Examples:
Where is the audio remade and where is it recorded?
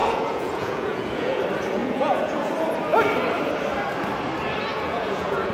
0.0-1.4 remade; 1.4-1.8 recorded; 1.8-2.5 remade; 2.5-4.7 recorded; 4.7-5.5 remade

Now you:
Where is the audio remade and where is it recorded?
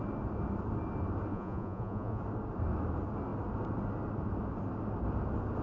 0.0-1.3 recorded; 1.3-2.2 remade; 2.2-5.6 recorded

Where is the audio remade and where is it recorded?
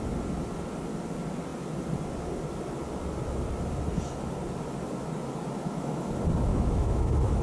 0.0-5.6 recorded; 5.6-6.1 remade; 6.1-6.5 recorded; 6.5-7.4 remade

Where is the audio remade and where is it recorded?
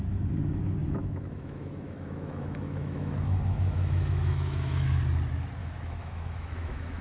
0.0-0.8 recorded; 0.8-5.0 remade; 5.0-5.6 recorded; 5.6-7.0 remade